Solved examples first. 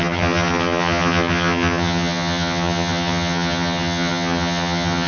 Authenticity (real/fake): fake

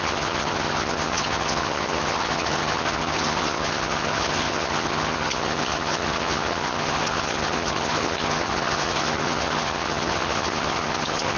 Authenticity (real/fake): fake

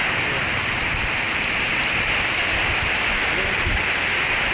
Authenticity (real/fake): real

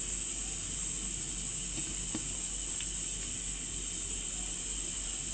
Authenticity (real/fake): real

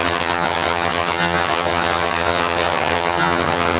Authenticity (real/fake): fake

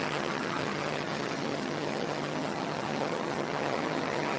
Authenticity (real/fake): fake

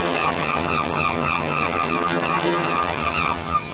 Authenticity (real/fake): fake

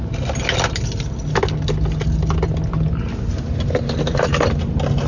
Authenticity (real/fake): real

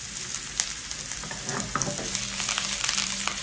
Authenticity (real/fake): real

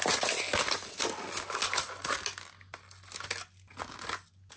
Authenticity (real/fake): real